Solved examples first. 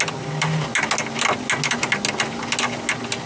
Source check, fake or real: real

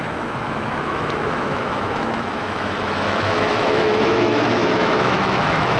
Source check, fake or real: fake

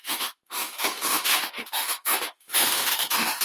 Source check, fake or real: fake